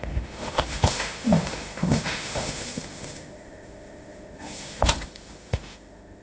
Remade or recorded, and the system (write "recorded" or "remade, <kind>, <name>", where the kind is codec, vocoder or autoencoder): remade, autoencoder, DAC-VAE